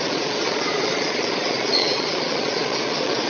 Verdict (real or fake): fake